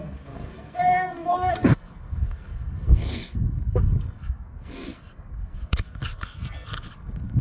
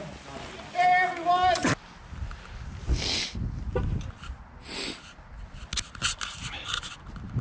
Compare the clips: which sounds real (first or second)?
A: second